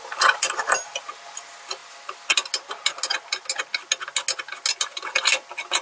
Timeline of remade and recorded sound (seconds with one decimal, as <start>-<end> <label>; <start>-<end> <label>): 0.0-5.8 recorded

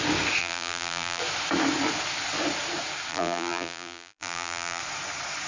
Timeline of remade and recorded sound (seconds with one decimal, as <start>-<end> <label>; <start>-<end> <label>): 0.0-0.4 recorded; 0.4-1.2 remade; 1.2-3.1 recorded; 3.1-4.8 remade; 4.8-5.5 recorded

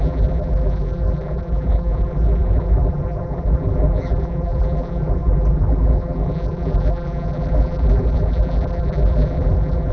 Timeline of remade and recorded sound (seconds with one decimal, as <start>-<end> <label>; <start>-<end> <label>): 0.0-9.9 remade

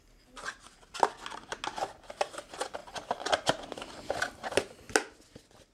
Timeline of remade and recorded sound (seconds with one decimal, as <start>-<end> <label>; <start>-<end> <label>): 0.0-5.7 recorded

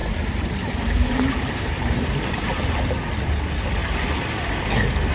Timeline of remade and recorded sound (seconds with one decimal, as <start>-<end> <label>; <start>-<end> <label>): 0.0-2.7 remade; 2.7-5.1 recorded

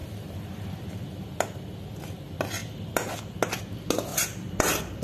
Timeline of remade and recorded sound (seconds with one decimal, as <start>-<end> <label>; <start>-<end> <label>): 0.0-0.6 remade; 0.6-4.1 recorded; 4.1-5.0 remade

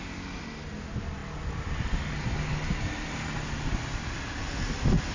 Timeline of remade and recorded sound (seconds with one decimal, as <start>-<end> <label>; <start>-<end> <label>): 0.0-5.1 recorded